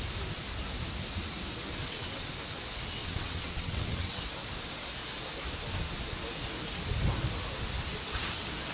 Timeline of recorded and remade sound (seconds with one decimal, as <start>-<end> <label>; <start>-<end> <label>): 0.0-1.8 recorded; 1.8-2.3 remade; 2.3-3.0 recorded; 3.0-4.2 remade; 4.2-8.7 recorded